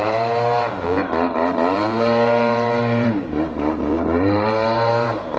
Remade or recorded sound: remade